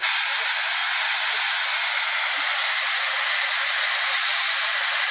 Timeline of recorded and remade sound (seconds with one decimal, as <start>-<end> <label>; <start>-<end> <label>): 0.0-5.1 recorded